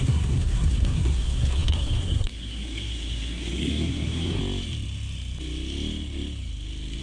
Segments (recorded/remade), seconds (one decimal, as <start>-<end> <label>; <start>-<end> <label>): 0.0-4.4 remade; 4.4-7.0 recorded